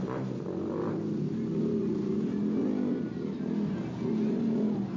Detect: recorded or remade recorded